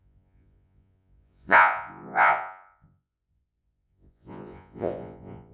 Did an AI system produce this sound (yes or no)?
yes